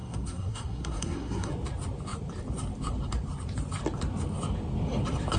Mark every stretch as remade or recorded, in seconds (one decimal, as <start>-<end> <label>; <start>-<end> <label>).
0.0-1.5 remade; 1.5-5.4 recorded